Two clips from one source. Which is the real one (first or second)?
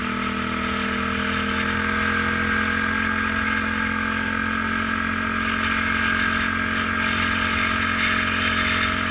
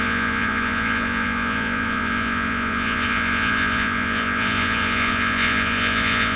first